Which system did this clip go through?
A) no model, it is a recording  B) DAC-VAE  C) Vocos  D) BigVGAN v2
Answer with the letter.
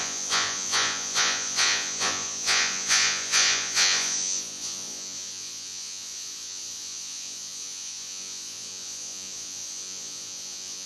C